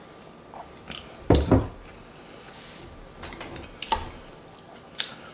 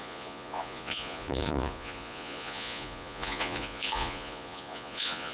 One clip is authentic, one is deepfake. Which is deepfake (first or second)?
second